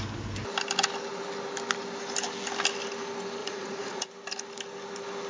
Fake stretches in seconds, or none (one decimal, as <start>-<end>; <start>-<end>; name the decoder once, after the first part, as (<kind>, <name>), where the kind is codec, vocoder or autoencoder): 3.4-4.1 (vocoder, Vocos)